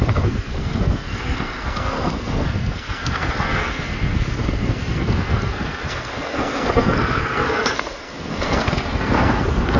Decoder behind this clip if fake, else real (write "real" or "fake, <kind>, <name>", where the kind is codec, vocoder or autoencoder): fake, codec, SNAC